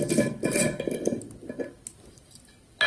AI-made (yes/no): no